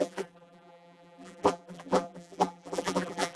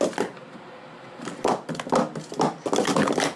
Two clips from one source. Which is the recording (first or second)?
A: second